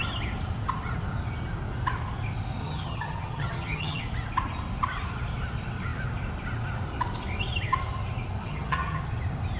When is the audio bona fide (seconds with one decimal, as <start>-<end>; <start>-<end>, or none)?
0.0-2.6; 4.0-8.4; 9.0-9.6